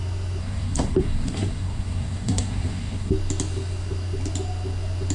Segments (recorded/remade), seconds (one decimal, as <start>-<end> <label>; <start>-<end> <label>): 0.0-0.4 recorded; 0.4-3.1 remade; 3.1-5.1 recorded